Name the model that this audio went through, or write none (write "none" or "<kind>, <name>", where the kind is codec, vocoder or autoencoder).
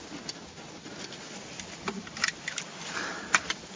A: none